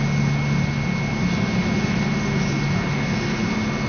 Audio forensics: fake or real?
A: real